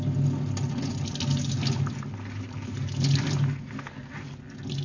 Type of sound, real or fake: real